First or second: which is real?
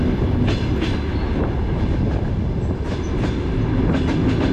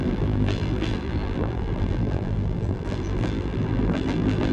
first